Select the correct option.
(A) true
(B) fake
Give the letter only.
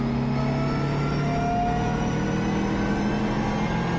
A